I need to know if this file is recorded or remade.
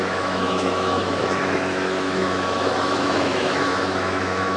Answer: remade